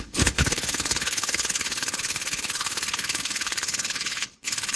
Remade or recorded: remade